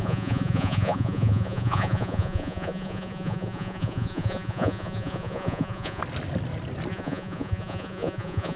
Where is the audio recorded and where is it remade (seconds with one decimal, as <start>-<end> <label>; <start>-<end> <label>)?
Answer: 0.0-6.0 remade; 6.0-6.9 recorded; 6.9-8.6 remade